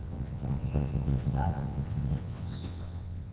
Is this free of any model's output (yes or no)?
no